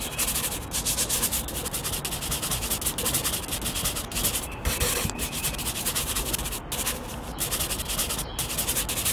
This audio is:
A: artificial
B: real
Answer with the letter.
B